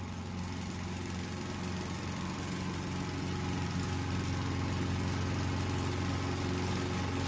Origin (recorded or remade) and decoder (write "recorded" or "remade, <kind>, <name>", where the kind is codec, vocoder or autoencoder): recorded